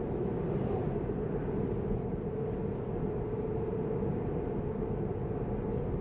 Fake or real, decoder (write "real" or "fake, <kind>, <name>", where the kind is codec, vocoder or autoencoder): real